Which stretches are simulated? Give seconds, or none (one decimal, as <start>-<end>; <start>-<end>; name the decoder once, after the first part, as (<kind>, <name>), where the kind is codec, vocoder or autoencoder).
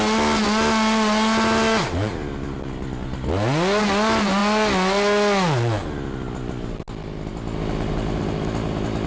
none